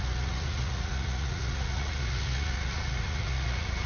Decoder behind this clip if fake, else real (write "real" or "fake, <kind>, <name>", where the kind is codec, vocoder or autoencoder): fake, vocoder, Vocos